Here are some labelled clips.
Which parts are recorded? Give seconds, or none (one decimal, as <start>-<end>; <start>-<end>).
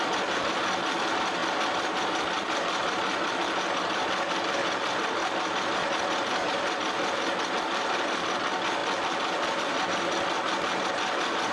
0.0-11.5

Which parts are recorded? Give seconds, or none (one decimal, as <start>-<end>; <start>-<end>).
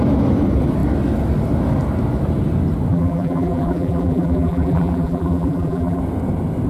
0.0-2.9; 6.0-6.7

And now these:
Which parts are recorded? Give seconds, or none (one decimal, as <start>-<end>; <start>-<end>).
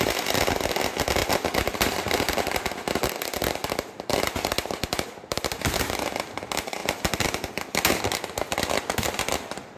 0.0-1.2; 5.8-6.8; 8.0-9.8